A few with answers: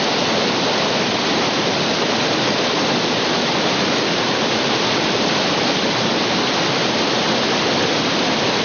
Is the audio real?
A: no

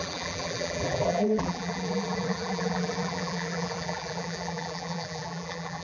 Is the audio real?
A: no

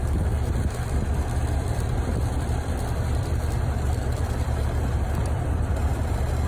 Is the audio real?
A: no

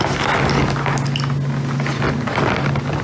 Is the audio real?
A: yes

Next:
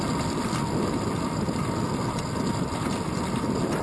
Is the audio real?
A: yes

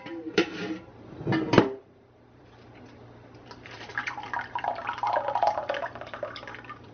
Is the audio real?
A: no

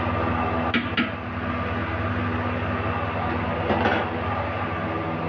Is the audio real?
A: yes